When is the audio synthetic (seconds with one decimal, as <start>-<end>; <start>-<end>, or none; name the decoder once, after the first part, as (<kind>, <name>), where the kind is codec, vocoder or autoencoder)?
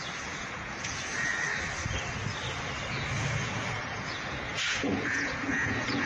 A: 0.0-1.3 (vocoder, Vocos); 2.9-6.1